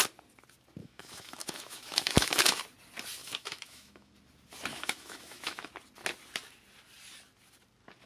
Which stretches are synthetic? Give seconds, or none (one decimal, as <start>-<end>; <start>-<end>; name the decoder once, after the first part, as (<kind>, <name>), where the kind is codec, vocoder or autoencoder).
0.8-2.6 (autoencoder, DAC-VAE); 3.2-4.1; 4.7-5.7